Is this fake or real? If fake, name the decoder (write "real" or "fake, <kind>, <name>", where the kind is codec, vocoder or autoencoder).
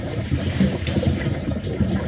fake, vocoder, BigVGAN v2